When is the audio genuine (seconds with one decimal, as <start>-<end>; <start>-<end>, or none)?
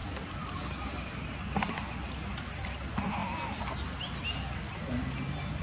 0.0-5.6